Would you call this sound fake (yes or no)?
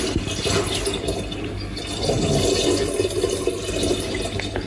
no